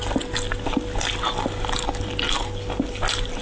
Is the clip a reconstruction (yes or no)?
no